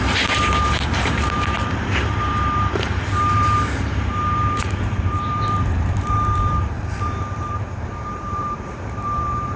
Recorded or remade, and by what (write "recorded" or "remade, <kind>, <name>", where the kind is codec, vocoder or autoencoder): remade, vocoder, BigVGAN v2